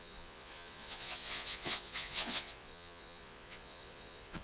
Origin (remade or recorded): remade